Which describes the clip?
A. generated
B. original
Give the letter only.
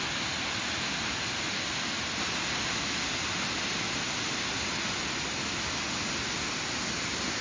B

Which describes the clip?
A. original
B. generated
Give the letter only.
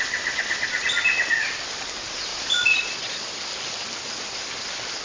A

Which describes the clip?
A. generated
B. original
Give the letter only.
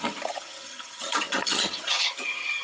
A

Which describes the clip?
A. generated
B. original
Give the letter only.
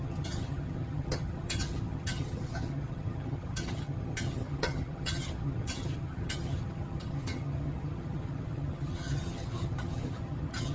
A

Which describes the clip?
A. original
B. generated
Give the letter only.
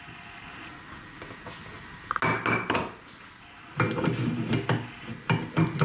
A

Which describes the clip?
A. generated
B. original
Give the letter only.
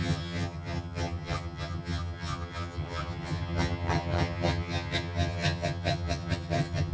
A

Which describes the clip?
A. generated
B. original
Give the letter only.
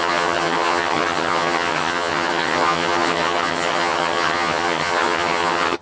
A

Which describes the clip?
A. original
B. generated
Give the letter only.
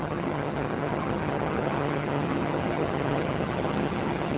B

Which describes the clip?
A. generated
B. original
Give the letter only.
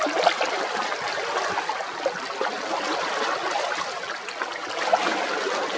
B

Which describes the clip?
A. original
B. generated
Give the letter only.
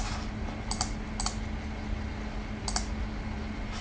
A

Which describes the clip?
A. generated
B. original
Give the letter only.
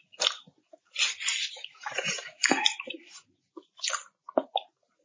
B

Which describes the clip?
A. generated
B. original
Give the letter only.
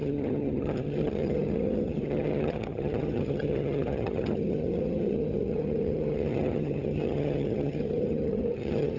A